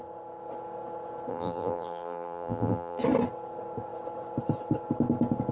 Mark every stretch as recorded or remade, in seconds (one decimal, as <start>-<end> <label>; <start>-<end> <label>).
0.0-1.3 recorded; 1.3-3.0 remade; 3.0-5.5 recorded